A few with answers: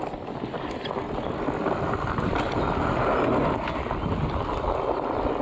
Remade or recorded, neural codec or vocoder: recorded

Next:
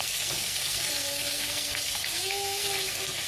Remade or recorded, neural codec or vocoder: remade, codec, SNAC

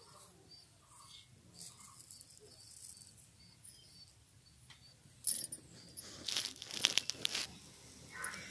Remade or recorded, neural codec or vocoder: recorded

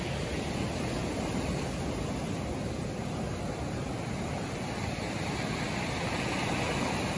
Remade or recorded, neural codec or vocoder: recorded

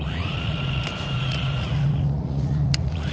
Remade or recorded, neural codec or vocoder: remade, vocoder, Vocos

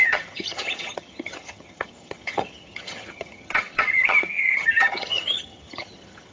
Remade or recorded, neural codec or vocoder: remade, vocoder, HiFi-GAN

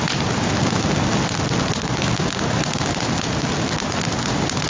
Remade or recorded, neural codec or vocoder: recorded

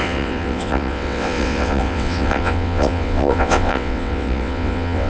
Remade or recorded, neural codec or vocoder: remade, vocoder, WaveNeXt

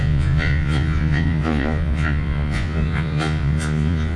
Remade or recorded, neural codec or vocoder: remade, vocoder, Vocos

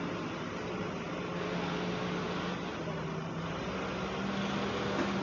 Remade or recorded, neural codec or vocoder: recorded